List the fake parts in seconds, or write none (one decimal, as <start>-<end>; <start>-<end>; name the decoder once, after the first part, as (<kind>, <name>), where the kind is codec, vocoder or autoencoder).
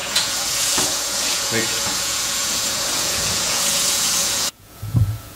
0.0-5.4 (vocoder, Vocos)